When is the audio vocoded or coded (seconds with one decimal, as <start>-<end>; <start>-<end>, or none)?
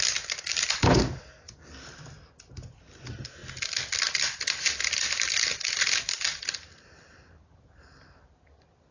none